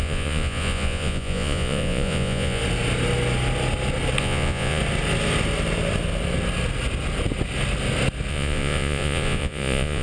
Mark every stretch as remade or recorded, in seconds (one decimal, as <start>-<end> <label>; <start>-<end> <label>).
0.0-2.6 remade; 2.6-4.2 recorded; 4.2-4.8 remade; 4.8-8.3 recorded; 8.3-10.0 remade